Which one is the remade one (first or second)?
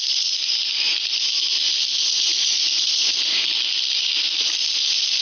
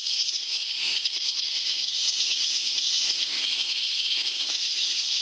second